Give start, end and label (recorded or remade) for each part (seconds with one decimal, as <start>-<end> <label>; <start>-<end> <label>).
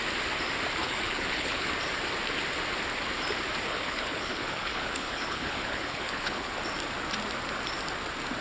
0.0-0.8 recorded; 0.8-1.7 remade; 1.7-3.7 recorded; 3.7-6.5 remade; 6.5-8.4 recorded